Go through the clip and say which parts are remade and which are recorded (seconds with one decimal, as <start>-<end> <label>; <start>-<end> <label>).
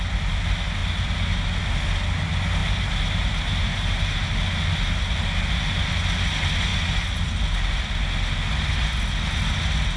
0.0-2.6 recorded; 2.6-4.3 remade; 4.3-10.0 recorded